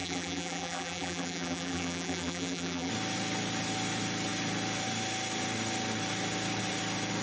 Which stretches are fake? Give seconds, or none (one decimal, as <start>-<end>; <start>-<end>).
0.0-2.9